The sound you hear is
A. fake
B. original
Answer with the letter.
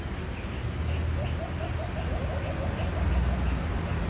B